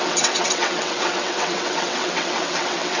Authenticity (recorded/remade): remade